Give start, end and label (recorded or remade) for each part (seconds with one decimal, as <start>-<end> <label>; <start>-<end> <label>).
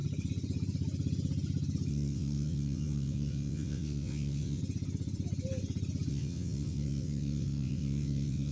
0.0-1.9 recorded; 1.9-4.6 remade; 4.6-6.1 recorded; 6.1-8.5 remade